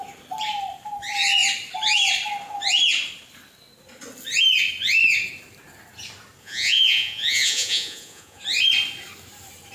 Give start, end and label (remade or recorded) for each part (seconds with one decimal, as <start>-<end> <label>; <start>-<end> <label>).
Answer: 0.0-6.4 recorded; 6.4-8.4 remade; 8.4-9.7 recorded